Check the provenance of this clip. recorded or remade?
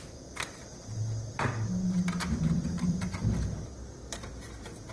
recorded